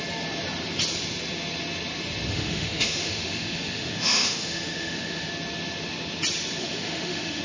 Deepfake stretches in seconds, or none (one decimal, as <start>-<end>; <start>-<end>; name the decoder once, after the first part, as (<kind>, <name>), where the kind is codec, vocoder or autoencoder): 2.3-5.3 (autoencoder, DAC-VAE); 6.6-7.4